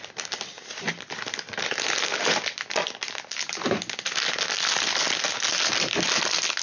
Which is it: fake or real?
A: real